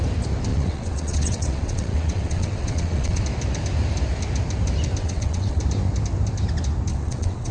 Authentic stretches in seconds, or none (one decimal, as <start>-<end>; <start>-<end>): 0.0-0.5; 3.2-5.0; 5.6-6.9